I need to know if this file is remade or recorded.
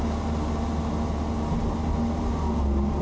recorded